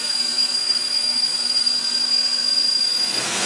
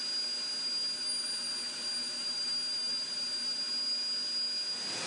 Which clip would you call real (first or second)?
second